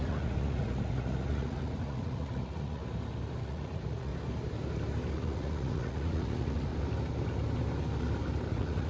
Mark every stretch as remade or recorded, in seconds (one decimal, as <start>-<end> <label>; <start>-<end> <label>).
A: 0.0-2.8 remade; 2.8-3.4 recorded; 3.4-4.1 remade; 4.1-5.1 recorded; 5.1-6.7 remade; 6.7-8.5 recorded; 8.5-8.9 remade